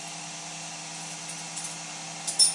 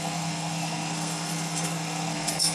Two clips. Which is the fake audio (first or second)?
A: second